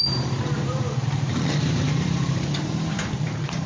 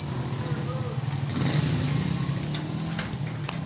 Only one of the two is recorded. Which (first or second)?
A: second